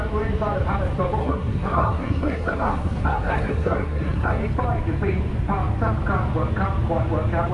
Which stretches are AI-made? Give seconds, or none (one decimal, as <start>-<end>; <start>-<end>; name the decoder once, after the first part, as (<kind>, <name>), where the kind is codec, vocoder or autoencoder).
1.2-4.4 (codec, SNAC)